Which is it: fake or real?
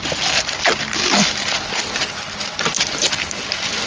real